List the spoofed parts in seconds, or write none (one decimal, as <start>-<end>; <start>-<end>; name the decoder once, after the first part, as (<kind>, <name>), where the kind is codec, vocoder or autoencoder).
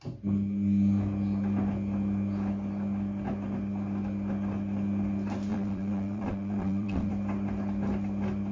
5.5-7.1 (vocoder, WaveNeXt)